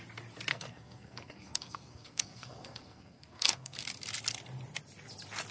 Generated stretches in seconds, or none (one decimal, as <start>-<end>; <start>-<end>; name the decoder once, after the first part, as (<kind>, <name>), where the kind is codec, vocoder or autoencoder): 0.5-3.8 (codec, SNAC)